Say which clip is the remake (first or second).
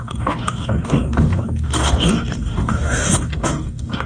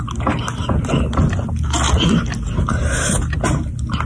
first